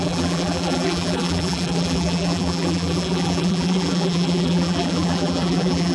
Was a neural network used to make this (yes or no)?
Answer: yes